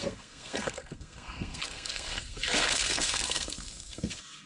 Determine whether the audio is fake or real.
fake